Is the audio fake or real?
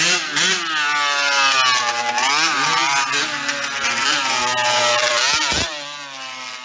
real